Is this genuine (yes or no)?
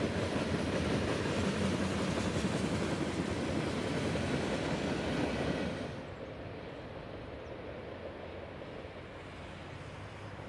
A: yes